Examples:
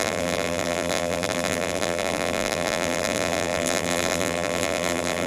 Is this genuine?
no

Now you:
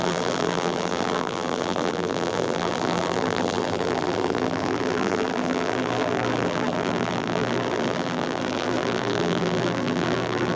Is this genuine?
no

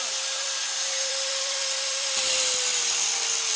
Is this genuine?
no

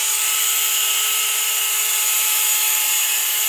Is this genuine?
no